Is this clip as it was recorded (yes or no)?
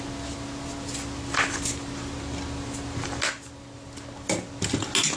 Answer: yes